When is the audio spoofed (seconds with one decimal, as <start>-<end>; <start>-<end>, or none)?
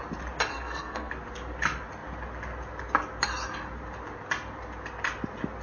0.5-1.1